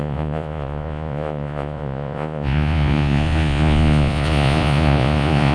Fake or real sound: fake